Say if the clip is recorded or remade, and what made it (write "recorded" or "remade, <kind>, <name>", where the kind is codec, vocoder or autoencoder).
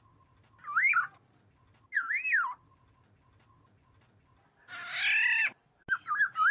recorded